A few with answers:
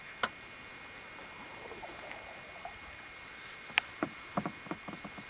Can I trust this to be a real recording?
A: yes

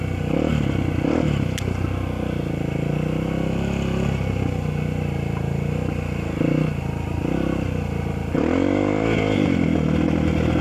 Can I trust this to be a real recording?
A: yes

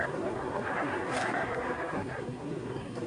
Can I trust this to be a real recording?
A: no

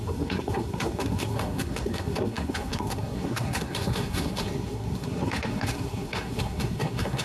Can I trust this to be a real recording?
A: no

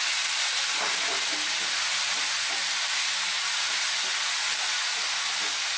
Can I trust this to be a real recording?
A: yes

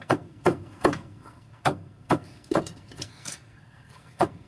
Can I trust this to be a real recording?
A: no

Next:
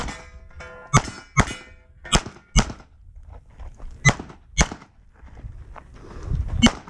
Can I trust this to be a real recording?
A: yes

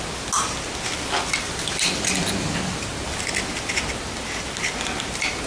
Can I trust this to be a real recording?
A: yes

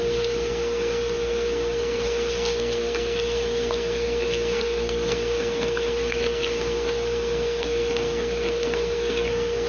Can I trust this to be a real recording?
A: no